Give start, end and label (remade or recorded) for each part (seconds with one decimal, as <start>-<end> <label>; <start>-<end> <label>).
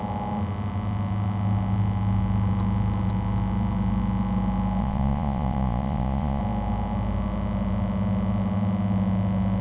0.0-4.8 recorded; 4.8-6.4 remade; 6.4-9.6 recorded